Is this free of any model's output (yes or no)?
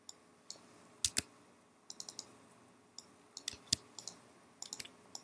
yes